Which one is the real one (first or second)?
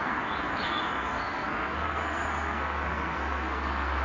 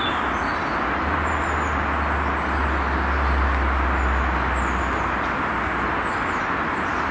second